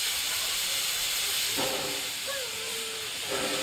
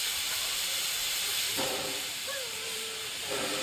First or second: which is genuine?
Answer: first